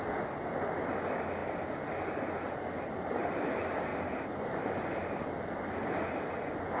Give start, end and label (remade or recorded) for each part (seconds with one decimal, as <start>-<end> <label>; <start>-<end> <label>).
0.0-6.8 recorded